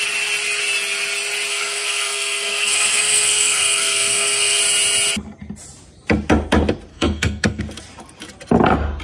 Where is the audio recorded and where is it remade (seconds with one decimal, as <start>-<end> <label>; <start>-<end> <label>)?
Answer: 0.0-1.5 recorded; 1.5-4.6 remade; 4.6-6.9 recorded; 6.9-7.6 remade; 7.6-9.0 recorded